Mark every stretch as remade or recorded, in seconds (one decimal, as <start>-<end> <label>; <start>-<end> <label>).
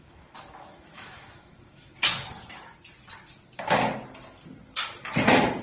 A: 0.0-1.9 remade; 1.9-5.6 recorded